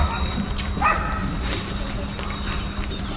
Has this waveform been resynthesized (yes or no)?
no